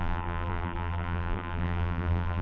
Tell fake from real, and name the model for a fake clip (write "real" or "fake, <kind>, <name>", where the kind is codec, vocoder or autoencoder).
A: fake, vocoder, BigVGAN v2